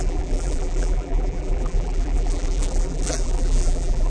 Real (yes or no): no